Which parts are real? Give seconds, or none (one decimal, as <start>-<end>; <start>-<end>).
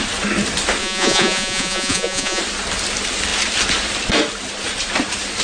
0.0-0.8; 2.4-5.4